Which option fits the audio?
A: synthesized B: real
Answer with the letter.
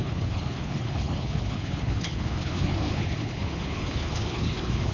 A